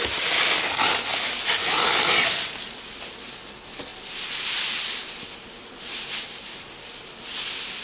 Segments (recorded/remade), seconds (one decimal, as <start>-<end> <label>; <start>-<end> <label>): 0.0-7.8 recorded